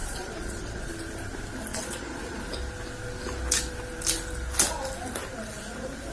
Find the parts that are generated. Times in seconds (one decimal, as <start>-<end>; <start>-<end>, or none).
0.0-0.9; 1.7-2.4